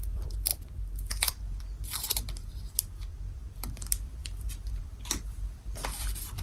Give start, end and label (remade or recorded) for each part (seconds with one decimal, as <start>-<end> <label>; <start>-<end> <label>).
0.0-6.4 remade